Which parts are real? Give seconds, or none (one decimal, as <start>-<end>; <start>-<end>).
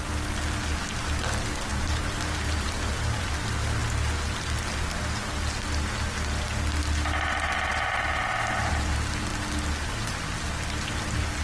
0.0-1.7; 3.3-11.4